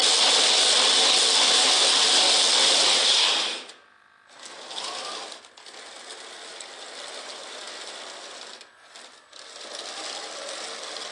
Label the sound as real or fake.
real